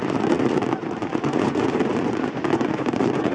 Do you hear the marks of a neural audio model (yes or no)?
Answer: yes